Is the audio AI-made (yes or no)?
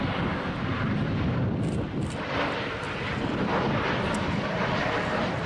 yes